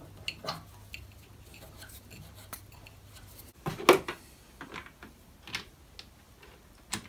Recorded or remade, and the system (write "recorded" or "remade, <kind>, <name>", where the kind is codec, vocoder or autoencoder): recorded